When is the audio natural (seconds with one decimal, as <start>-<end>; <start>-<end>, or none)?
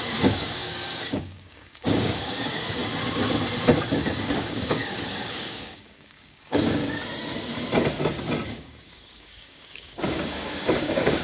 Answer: 2.8-4.2; 6.8-8.5